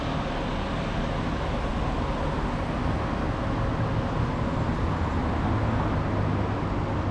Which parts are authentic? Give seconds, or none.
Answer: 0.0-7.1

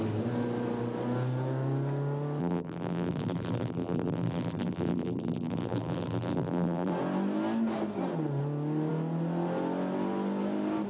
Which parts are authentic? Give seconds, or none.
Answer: 0.0-2.4; 6.9-10.9